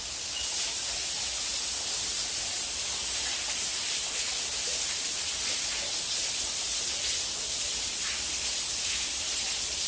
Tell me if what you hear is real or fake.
real